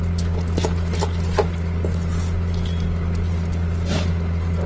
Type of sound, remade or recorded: recorded